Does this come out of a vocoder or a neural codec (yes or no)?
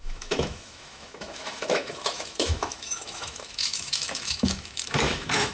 yes